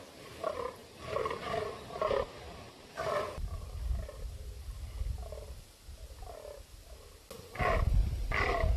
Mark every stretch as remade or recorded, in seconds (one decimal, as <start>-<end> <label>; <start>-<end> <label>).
0.0-8.8 recorded